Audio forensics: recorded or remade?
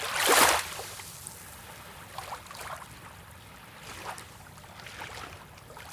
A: recorded